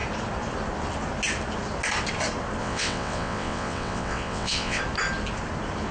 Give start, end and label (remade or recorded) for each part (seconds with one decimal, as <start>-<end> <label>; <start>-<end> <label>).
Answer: 0.0-2.6 recorded; 2.6-4.8 remade; 4.8-5.9 recorded